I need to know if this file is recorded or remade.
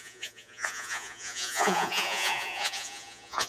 remade